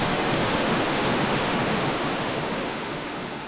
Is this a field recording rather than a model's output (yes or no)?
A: no